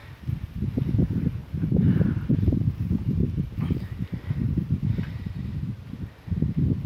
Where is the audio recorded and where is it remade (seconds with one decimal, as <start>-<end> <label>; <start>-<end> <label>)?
0.0-1.0 recorded; 1.0-6.9 remade